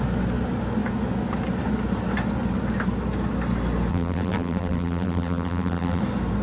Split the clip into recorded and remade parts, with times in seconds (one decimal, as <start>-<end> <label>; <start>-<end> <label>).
0.0-3.9 recorded; 3.9-6.0 remade; 6.0-6.4 recorded